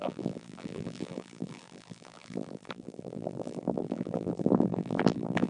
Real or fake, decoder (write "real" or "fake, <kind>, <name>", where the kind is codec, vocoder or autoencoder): fake, vocoder, BigVGAN v2